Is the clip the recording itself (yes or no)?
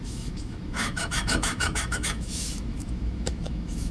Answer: no